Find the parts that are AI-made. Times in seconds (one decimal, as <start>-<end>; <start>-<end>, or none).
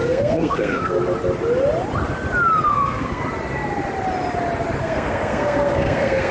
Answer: 0.0-1.0; 2.7-3.2; 4.8-6.3